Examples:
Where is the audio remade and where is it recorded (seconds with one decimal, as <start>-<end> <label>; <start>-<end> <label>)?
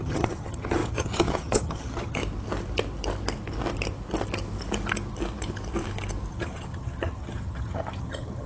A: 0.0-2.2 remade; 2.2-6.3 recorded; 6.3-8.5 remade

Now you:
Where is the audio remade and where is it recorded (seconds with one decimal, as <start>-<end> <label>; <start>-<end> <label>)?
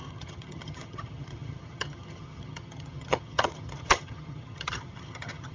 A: 0.0-5.5 remade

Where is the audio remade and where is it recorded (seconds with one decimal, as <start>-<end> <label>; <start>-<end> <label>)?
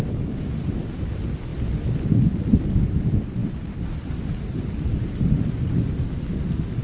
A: 0.0-6.8 recorded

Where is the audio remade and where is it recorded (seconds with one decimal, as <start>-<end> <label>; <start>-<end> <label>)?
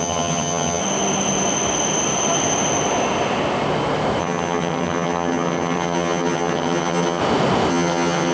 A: 0.0-0.8 remade; 0.8-4.2 recorded; 4.2-7.2 remade; 7.2-7.7 recorded; 7.7-8.3 remade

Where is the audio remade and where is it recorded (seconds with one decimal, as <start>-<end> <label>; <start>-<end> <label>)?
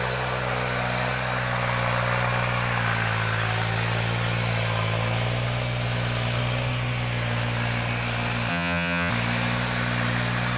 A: 0.0-8.5 recorded; 8.5-9.1 remade; 9.1-10.6 recorded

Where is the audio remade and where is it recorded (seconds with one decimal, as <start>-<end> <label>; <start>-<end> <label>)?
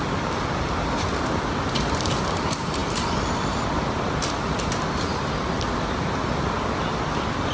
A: 0.0-7.5 recorded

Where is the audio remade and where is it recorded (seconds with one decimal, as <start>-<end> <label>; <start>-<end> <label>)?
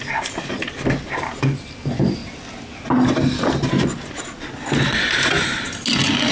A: 0.0-6.3 recorded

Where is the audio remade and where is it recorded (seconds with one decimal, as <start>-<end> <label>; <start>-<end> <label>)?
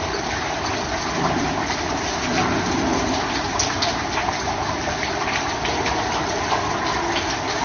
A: 0.0-7.6 recorded